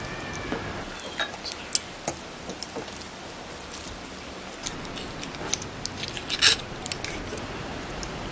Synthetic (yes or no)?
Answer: no